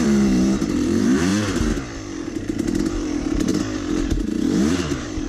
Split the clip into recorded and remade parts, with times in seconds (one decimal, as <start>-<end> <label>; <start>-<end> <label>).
0.0-1.3 remade; 1.3-2.9 recorded; 2.9-3.5 remade; 3.5-4.7 recorded; 4.7-5.3 remade